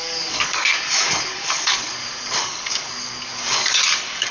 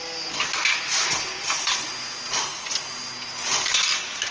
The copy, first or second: first